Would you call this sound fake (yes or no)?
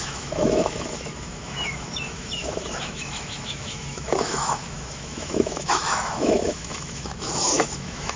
yes